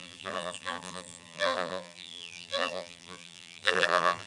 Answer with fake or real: fake